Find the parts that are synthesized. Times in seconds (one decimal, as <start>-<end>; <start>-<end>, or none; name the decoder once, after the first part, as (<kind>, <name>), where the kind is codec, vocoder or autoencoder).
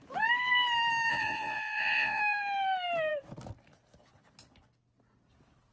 1.1-2.2 (vocoder, Vocos)